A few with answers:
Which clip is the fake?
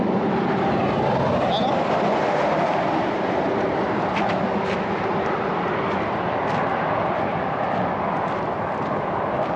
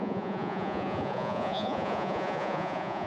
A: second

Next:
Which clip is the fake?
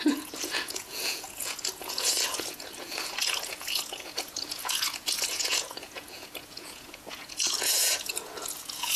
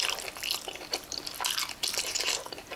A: first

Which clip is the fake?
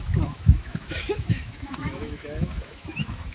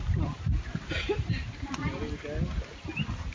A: first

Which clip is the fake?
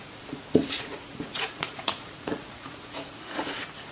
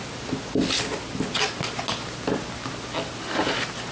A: first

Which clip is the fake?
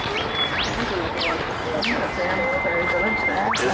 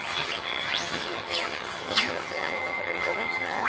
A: second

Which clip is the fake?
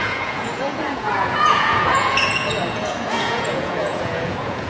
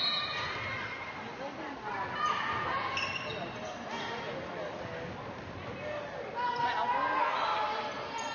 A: first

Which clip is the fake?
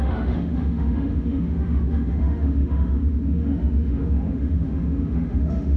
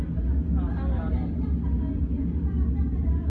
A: first